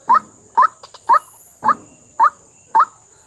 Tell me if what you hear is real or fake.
real